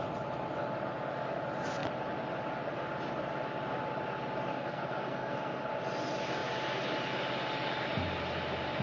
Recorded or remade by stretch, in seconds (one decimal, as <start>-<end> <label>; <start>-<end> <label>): 0.0-4.5 recorded; 4.5-5.7 remade; 5.7-8.8 recorded